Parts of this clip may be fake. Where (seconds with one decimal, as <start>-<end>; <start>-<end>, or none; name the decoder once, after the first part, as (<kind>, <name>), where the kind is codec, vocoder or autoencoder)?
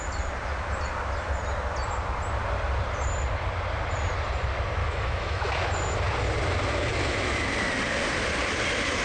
4.8-5.5 (autoencoder, DAC-VAE); 6.9-7.4